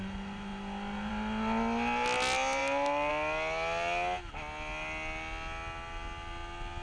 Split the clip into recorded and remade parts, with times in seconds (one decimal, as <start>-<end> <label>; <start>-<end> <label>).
0.0-6.8 recorded